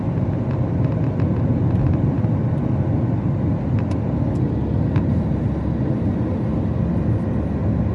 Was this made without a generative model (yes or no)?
yes